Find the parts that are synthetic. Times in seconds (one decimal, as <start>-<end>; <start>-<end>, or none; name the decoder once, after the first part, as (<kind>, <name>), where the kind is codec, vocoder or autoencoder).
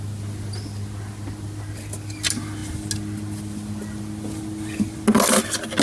none